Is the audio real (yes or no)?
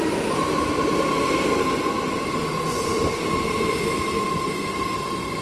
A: yes